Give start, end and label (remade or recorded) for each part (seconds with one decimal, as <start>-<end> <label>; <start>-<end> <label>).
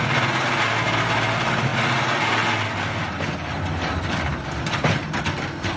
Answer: 0.0-1.7 recorded; 1.7-5.2 remade; 5.2-5.8 recorded